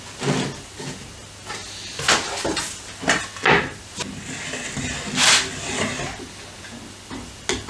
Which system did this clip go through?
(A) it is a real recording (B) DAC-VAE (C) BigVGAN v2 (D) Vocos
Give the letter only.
A